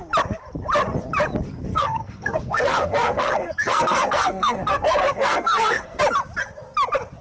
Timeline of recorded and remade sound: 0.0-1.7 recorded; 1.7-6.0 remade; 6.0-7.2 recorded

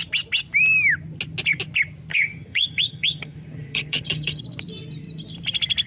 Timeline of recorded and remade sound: 0.0-2.1 recorded; 2.1-4.4 remade; 4.4-5.9 recorded

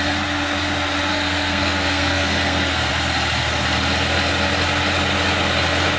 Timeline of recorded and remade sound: 0.0-1.1 recorded; 1.1-2.9 remade; 2.9-6.0 recorded

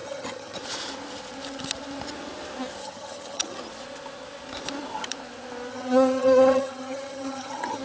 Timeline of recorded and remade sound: 0.0-0.6 remade; 0.6-2.8 recorded; 2.8-3.6 remade; 3.6-5.7 recorded; 5.7-7.8 remade

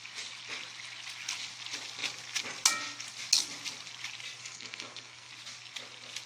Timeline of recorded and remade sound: 0.0-4.4 recorded; 4.4-5.3 remade; 5.3-6.3 recorded

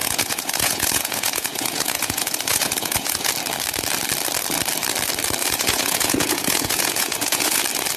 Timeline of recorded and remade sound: 0.0-3.3 remade; 3.3-5.4 recorded; 5.4-7.6 remade; 7.6-8.0 recorded

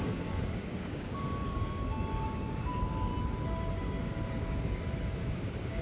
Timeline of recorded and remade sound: 0.0-3.1 remade; 3.1-4.0 recorded; 4.0-5.8 remade

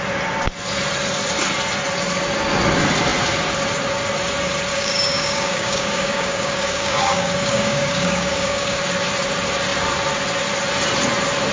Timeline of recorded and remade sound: 0.0-4.7 recorded; 4.7-8.8 remade; 8.8-11.5 recorded